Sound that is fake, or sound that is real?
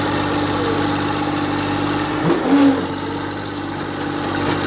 real